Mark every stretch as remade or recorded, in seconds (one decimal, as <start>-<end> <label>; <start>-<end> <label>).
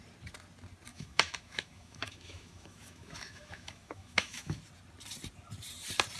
0.0-0.9 recorded; 0.9-4.6 remade; 4.6-6.2 recorded